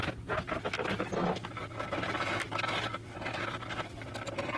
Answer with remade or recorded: recorded